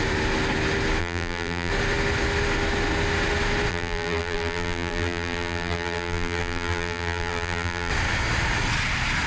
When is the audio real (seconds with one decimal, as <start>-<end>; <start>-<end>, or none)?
0.0-1.0; 1.7-3.7; 7.9-9.3